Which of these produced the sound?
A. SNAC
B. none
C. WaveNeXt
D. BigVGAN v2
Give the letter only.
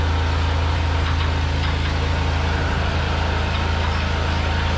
B